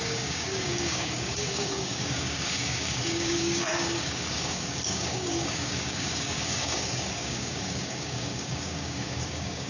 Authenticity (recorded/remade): remade